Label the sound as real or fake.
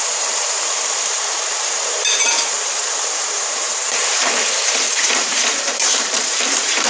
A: fake